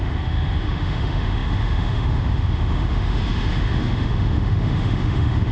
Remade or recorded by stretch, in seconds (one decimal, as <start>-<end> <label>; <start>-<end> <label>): 0.0-5.5 remade